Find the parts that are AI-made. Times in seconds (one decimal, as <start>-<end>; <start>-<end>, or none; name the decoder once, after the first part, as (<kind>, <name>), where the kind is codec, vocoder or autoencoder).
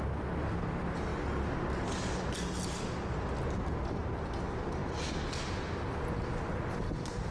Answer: none